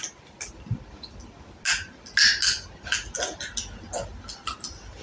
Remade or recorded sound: recorded